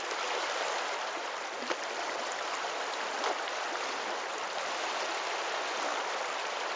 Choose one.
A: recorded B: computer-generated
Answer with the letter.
A